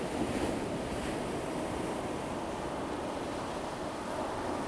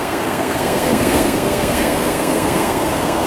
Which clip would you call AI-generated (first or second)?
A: second